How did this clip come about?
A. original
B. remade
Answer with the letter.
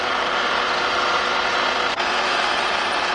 A